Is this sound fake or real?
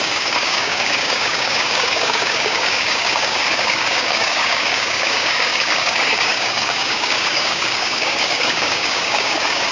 fake